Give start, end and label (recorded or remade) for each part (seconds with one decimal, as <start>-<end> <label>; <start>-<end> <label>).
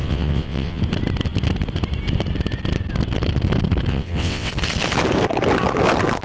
0.0-0.8 remade; 0.8-3.9 recorded; 3.9-4.5 remade; 4.5-6.2 recorded